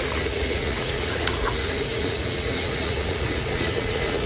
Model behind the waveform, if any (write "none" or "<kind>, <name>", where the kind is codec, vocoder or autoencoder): vocoder, Vocos